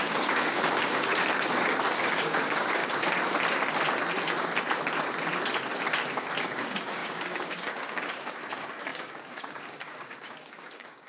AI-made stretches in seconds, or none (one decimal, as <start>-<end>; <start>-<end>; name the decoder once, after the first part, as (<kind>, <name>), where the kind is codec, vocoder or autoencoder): 0.0-1.1 (codec, DAC); 2.0-2.8; 6.4-11.1